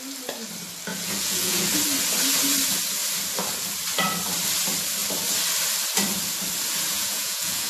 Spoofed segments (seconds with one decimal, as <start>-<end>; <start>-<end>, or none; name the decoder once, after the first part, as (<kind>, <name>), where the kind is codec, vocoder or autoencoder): 0.9-1.7 (vocoder, Vocos); 6.9-7.7